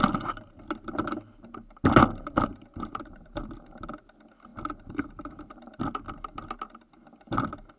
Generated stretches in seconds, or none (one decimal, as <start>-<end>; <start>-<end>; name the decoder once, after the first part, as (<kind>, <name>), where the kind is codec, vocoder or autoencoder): 2.5-3.9 (vocoder, BigVGAN v2); 4.5-5.8